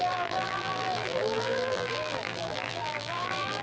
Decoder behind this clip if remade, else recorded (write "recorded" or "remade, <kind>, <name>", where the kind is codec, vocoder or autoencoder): remade, vocoder, BigVGAN v2